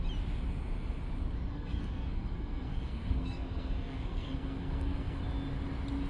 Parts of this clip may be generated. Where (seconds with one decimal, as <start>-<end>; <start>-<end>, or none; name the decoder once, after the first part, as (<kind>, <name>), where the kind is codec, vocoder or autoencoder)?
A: 1.5-5.2 (codec, SNAC)